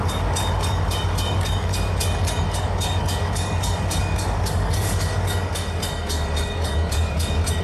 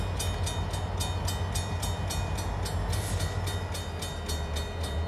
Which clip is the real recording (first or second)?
second